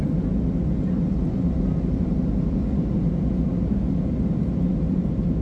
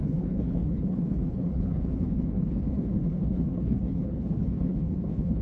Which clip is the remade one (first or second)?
second